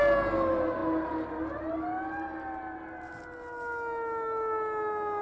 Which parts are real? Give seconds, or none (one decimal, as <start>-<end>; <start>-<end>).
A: 0.0-5.2